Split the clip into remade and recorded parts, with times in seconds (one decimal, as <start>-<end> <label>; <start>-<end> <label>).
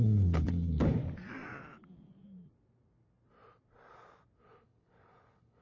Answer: 0.0-1.0 remade; 1.0-4.4 recorded; 4.4-5.6 remade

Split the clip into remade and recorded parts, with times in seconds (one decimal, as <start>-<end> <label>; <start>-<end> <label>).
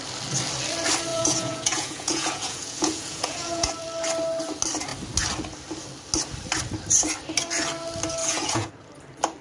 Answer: 0.0-1.1 recorded; 1.1-3.7 remade; 3.7-8.2 recorded; 8.2-8.7 remade; 8.7-9.4 recorded